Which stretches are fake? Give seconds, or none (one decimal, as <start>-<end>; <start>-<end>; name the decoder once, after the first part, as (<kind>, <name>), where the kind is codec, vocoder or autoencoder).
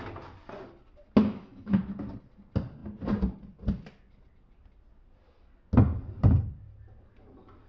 1.2-1.8 (autoencoder, DAC-VAE)